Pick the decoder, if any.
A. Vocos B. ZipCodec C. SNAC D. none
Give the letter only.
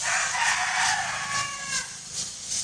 D